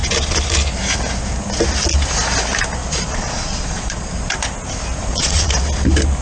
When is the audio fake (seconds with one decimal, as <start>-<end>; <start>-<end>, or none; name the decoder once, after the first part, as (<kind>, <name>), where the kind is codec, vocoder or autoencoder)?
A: 2.8-4.1 (vocoder, Vocos); 5.0-5.6